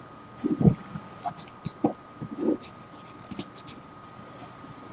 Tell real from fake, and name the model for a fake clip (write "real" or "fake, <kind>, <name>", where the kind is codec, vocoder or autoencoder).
real